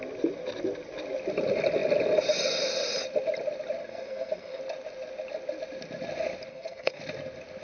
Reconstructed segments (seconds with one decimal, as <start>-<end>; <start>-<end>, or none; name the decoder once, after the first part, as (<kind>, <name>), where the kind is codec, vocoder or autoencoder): 3.8-4.6 (codec, SNAC); 6.5-7.0